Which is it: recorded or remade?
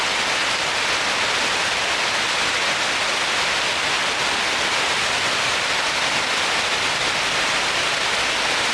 recorded